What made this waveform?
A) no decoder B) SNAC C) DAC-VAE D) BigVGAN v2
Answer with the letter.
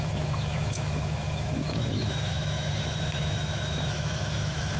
C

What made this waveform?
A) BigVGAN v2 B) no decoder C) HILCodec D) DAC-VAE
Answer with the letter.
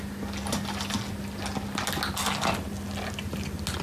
B